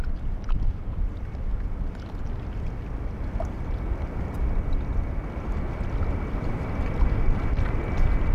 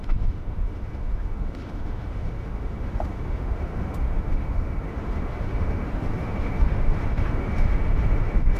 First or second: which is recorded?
first